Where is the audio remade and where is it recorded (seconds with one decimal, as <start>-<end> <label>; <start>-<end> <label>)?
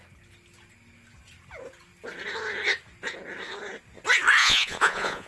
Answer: 0.0-4.4 recorded; 4.4-5.3 remade